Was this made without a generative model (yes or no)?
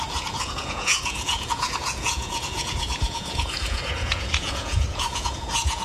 no